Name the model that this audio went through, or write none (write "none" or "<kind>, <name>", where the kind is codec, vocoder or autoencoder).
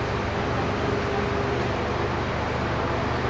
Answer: none